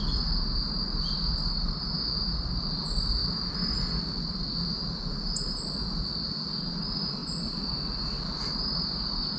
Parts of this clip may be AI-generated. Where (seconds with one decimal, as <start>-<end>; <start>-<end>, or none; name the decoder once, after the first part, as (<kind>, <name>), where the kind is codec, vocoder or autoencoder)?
none